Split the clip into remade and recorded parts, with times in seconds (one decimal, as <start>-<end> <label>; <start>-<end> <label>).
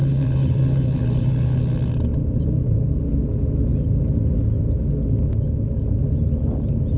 0.0-1.6 remade; 1.6-2.1 recorded; 2.1-3.2 remade; 3.2-7.0 recorded